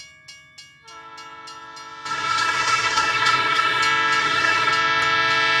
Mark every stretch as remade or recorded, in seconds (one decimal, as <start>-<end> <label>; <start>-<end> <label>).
0.0-2.1 recorded; 2.1-3.8 remade; 3.8-4.2 recorded; 4.2-4.7 remade; 4.7-5.6 recorded